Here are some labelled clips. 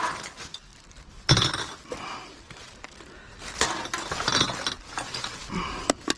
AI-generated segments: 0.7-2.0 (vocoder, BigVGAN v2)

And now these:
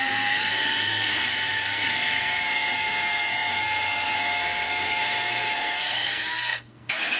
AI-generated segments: 0.0-7.2 (codec, SNAC)

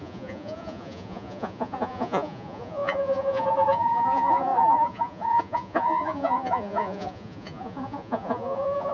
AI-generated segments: 0.0-8.9 (vocoder, Vocos)

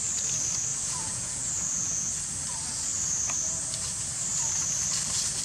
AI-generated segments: 0.7-2.1 (vocoder, Vocos)